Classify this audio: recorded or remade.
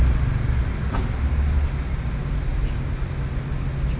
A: recorded